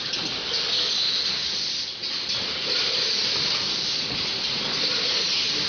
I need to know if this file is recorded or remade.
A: recorded